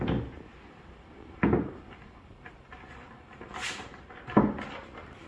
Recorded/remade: recorded